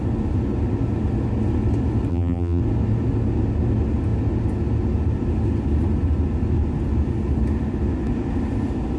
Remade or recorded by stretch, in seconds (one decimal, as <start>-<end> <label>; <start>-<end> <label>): 0.0-2.1 recorded; 2.1-2.6 remade; 2.6-9.0 recorded